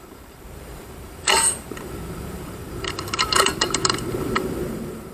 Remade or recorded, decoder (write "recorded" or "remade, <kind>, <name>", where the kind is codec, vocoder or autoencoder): remade, vocoder, BigVGAN v2